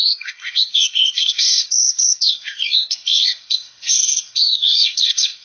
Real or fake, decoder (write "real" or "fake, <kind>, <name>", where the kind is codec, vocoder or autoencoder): fake, codec, SNAC